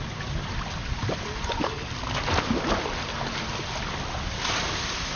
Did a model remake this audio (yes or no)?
no